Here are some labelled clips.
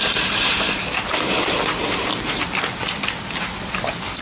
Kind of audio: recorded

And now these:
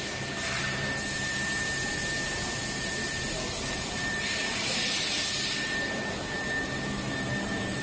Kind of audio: remade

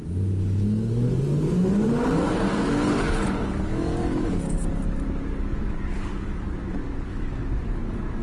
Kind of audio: remade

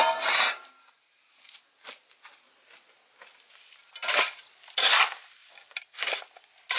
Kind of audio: recorded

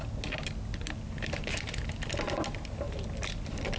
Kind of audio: recorded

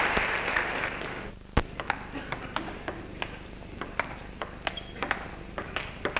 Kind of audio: recorded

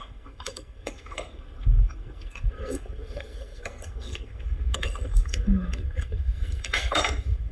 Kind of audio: remade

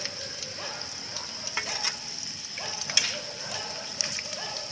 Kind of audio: recorded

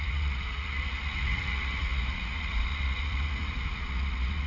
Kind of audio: remade